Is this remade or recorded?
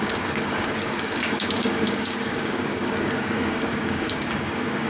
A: remade